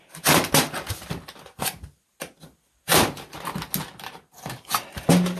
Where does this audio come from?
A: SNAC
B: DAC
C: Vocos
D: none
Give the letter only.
D